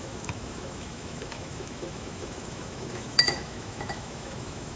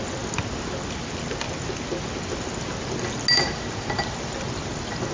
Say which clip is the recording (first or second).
second